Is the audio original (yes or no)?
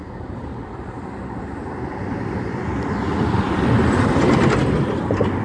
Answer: yes